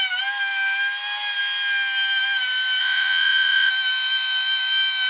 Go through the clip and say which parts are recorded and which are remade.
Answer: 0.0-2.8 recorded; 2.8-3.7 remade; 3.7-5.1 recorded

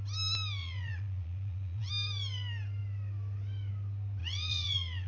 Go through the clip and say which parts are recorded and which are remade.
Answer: 0.0-0.6 recorded; 0.6-1.9 remade; 1.9-4.2 recorded; 4.2-5.1 remade

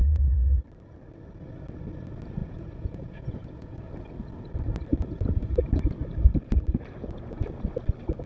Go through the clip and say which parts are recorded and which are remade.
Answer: 0.0-0.6 remade; 0.6-2.4 recorded; 2.4-3.8 remade; 3.8-8.3 recorded